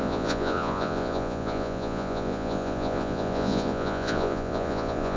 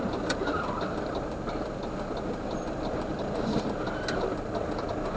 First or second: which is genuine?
second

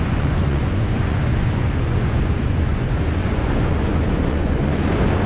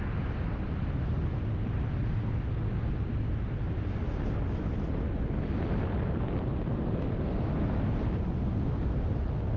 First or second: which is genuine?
second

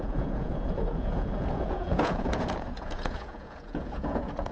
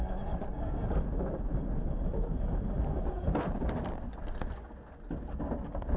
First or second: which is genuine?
second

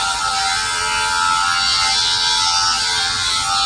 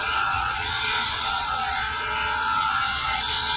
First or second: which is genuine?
first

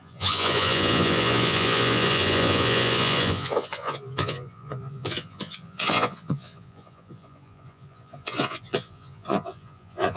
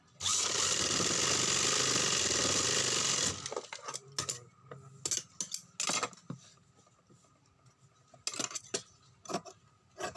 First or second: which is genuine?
second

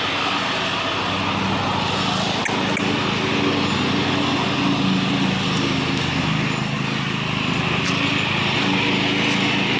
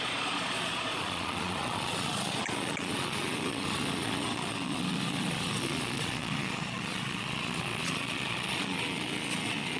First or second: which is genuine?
first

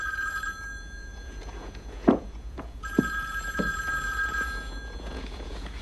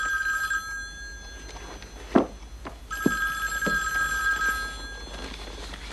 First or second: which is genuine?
second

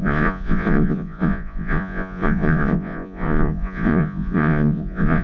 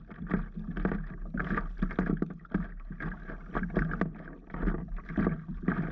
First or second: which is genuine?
second